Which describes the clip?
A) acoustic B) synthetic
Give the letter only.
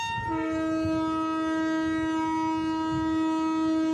A